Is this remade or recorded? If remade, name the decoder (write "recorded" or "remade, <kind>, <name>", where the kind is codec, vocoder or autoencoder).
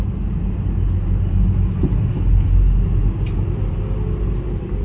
recorded